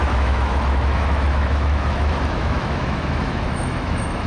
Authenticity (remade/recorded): remade